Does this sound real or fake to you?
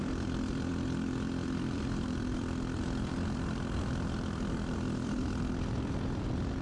fake